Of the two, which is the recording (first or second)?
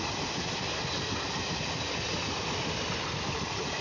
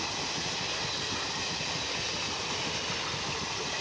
second